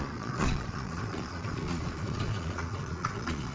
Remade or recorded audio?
remade